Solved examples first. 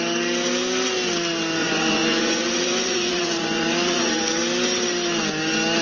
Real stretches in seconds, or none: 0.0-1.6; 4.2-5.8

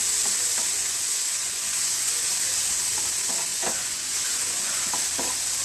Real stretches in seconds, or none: 0.0-0.8; 2.3-3.5; 4.9-5.6

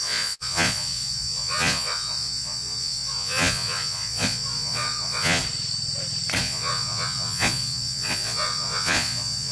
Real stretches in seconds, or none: 5.4-6.4

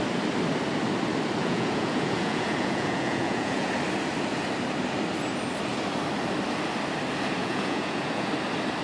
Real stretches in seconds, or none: 0.0-1.4; 3.7-7.4; 8.3-8.8

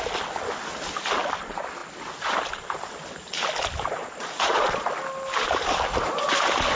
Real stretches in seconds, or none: 0.0-4.0; 4.9-6.8

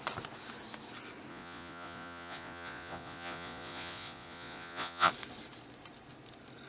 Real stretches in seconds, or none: 0.0-1.3; 5.1-6.7

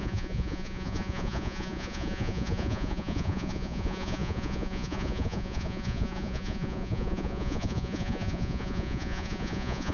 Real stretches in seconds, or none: none